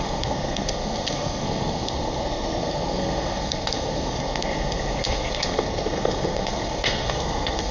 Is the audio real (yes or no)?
no